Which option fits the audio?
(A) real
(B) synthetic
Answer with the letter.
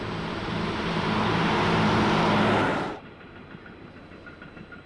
B